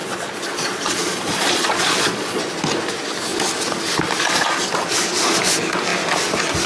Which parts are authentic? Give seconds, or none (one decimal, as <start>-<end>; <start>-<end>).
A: 2.4-6.7